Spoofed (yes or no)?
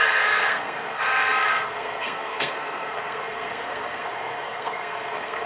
yes